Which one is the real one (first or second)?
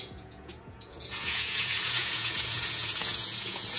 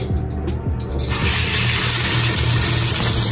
second